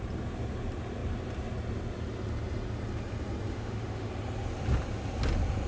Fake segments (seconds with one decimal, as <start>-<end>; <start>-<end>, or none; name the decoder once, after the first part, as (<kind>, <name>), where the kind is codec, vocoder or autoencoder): 3.5-4.1 (autoencoder, DAC-VAE)